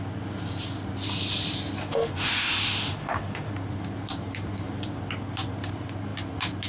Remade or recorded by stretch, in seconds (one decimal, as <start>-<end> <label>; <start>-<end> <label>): 0.0-1.8 recorded; 1.8-3.5 remade; 3.5-6.7 recorded

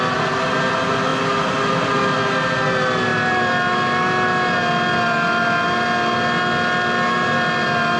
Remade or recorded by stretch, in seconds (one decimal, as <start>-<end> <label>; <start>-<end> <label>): 0.0-8.0 recorded

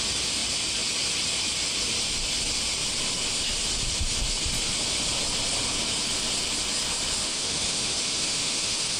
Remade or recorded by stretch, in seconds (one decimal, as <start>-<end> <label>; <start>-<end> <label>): 0.0-7.2 recorded; 7.2-9.0 remade

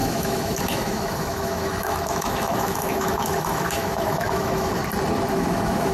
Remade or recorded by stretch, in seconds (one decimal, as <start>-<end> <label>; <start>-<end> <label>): 0.0-4.8 remade; 4.8-5.3 recorded; 5.3-5.9 remade